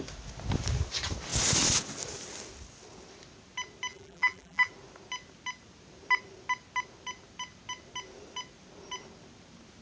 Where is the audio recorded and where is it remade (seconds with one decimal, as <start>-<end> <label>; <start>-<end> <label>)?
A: 0.0-3.9 recorded; 3.9-4.7 remade; 4.7-9.8 recorded